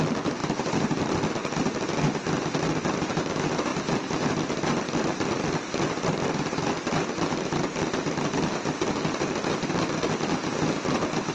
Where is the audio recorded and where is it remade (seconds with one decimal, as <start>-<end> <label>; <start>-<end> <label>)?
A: 0.0-0.4 recorded; 0.4-1.0 remade; 1.0-11.3 recorded

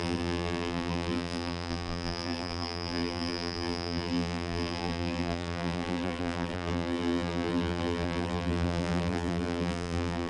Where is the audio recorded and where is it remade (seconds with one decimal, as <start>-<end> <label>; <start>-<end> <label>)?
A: 0.0-10.3 remade

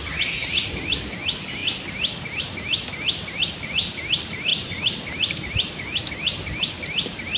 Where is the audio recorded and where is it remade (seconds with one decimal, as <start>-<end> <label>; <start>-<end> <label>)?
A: 0.0-0.4 recorded; 0.4-1.0 remade; 1.0-4.5 recorded; 4.5-6.0 remade; 6.0-7.4 recorded

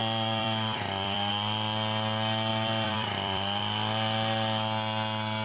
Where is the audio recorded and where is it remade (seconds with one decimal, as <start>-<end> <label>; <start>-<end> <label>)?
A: 0.0-1.3 remade; 1.3-2.5 recorded; 2.5-3.6 remade; 3.6-5.4 recorded

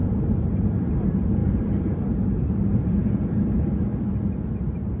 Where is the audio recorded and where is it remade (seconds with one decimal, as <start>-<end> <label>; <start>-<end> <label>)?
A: 0.0-3.9 remade; 3.9-4.5 recorded; 4.5-5.0 remade

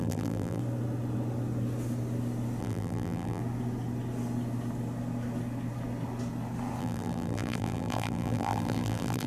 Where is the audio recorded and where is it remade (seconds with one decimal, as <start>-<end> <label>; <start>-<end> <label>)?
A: 0.0-0.6 remade; 0.6-2.6 recorded; 2.6-3.4 remade; 3.4-6.8 recorded; 6.8-9.3 remade

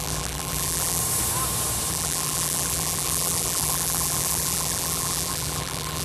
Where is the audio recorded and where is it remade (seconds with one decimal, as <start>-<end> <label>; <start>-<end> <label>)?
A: 0.0-1.0 remade; 1.0-1.9 recorded; 1.9-6.0 remade

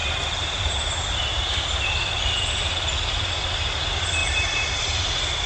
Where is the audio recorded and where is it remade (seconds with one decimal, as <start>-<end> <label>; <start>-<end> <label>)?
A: 0.0-4.2 recorded; 4.2-5.1 remade; 5.1-5.5 recorded